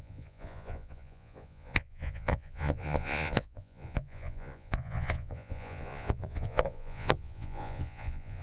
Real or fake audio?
fake